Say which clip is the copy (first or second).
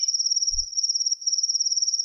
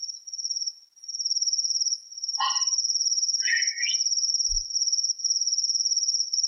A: second